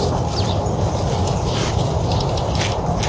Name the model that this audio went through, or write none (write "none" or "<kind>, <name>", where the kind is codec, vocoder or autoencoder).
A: none